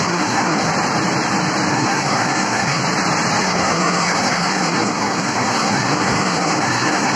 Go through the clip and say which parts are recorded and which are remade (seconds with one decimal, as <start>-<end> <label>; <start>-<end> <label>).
0.0-0.7 remade; 0.7-1.7 recorded; 1.7-2.8 remade; 2.8-3.4 recorded; 3.4-7.2 remade